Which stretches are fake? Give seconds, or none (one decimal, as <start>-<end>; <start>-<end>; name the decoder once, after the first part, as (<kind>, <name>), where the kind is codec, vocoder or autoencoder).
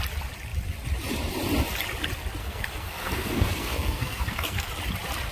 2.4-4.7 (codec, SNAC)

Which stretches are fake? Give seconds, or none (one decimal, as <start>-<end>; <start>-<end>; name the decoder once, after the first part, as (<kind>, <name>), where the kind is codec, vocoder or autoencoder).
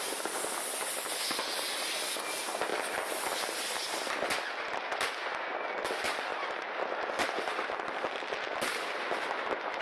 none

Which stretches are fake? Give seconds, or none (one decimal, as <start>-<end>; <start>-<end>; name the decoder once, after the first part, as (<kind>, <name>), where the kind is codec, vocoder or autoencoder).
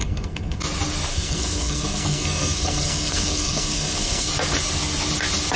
0.0-0.6 (codec, SNAC); 1.1-4.3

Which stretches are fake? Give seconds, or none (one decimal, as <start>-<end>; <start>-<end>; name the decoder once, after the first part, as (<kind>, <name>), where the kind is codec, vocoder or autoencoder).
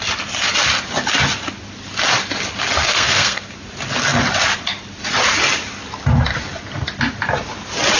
2.9-3.5 (codec, SNAC)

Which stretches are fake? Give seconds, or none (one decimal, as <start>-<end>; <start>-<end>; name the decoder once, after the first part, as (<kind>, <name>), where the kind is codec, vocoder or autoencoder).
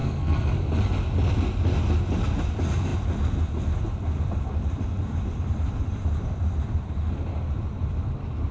0.0-0.5 (codec, SNAC)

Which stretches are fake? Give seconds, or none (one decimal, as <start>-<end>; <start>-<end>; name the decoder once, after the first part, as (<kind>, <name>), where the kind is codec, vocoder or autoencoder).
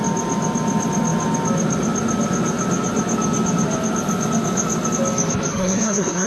5.5-6.3 (codec, SNAC)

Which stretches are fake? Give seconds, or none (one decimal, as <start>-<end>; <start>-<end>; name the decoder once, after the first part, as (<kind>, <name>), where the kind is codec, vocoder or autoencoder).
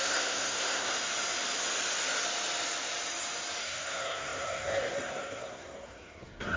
0.0-0.9 (codec, SNAC); 3.6-6.6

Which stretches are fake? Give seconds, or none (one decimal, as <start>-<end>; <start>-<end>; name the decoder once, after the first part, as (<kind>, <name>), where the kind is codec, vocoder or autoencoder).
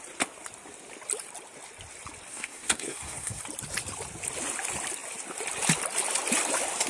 2.3-3.4 (codec, SNAC)